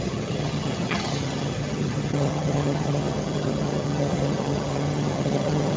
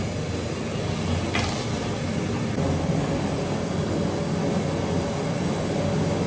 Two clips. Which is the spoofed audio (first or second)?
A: first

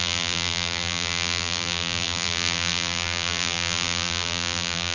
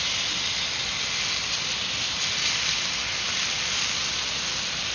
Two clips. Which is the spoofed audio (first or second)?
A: first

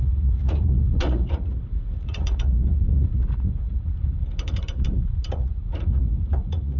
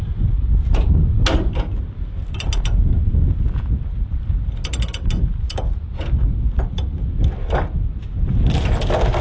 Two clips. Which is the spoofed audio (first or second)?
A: first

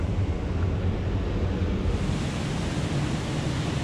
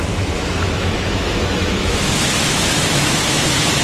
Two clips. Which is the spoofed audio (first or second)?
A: second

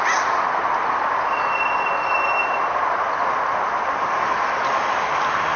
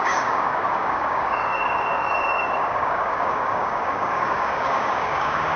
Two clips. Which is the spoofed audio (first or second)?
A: second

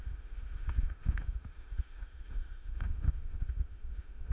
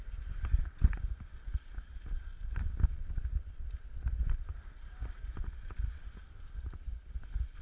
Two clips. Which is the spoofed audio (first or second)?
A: first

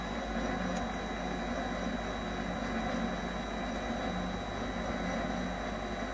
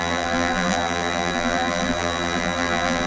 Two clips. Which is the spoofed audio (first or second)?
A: second